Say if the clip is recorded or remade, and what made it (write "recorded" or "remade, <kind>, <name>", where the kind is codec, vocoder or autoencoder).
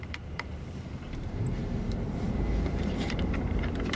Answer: remade, vocoder, BigVGAN v2